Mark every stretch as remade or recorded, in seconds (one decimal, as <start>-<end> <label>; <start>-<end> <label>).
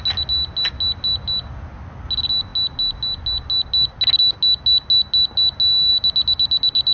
0.0-6.9 recorded